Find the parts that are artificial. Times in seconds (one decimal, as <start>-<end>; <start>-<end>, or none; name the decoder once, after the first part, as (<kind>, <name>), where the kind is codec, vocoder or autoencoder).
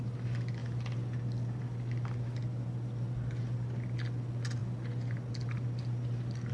none